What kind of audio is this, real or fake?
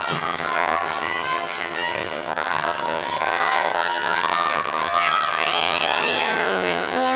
fake